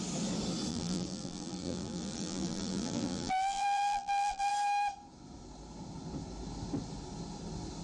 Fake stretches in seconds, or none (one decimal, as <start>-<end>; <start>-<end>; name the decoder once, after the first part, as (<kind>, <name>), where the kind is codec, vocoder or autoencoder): 0.7-4.5 (vocoder, BigVGAN v2)